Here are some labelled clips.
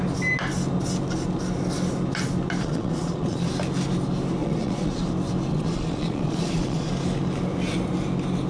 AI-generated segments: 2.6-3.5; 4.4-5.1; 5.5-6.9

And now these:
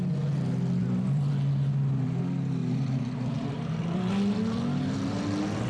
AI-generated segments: 0.8-1.3; 2.6-4.1

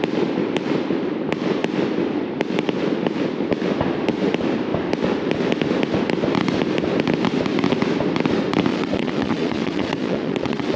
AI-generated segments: 8.7-10.8

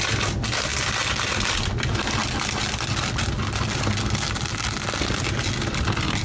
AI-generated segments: none

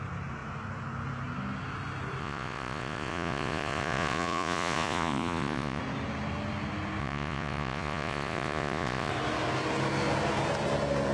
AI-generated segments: 2.2-5.8; 7.0-9.1

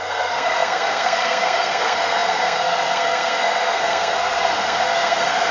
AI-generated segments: 0.0-5.5